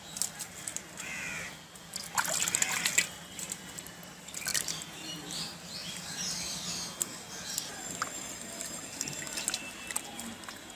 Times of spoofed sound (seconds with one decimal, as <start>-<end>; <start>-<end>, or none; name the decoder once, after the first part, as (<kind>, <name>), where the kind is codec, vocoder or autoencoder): none